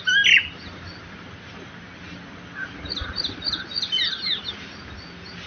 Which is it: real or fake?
real